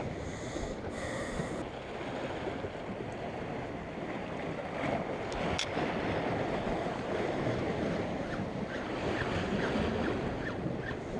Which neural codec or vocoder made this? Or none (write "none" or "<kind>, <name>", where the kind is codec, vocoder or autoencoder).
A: none